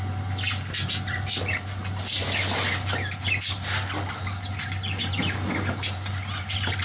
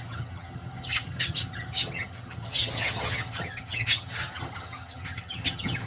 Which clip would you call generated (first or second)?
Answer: second